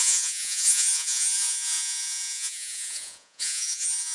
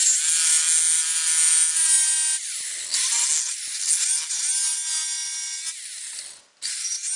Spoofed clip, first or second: first